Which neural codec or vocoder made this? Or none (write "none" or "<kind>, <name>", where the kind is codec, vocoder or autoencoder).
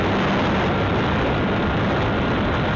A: none